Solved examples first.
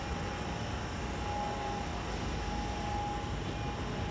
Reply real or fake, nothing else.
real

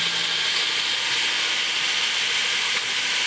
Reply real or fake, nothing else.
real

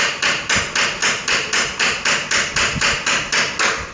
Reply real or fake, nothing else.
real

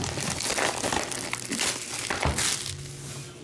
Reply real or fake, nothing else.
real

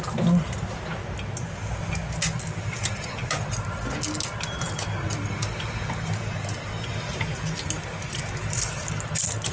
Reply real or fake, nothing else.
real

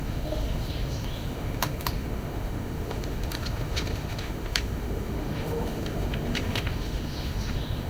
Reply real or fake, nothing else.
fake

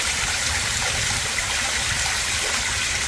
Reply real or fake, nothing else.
real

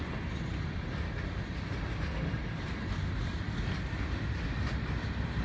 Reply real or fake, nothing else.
real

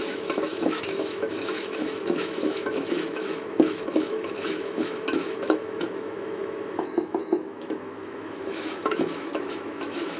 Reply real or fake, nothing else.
fake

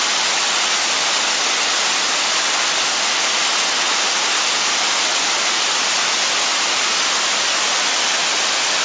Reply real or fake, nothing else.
real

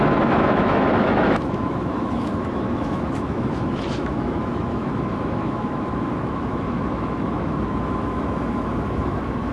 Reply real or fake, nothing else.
fake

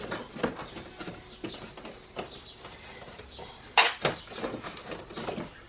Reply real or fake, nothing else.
real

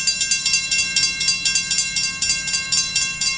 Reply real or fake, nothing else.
real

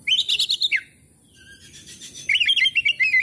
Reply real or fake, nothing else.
real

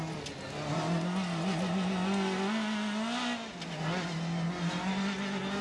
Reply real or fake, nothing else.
real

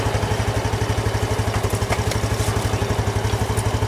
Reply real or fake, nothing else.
real